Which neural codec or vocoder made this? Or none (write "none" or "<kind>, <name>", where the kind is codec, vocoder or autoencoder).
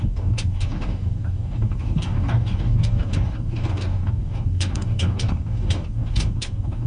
codec, DAC